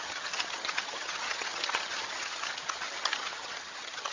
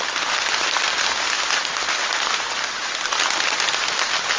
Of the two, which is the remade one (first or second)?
first